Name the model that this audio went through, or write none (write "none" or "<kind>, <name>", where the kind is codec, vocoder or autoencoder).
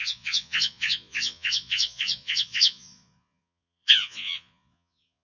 vocoder, Vocos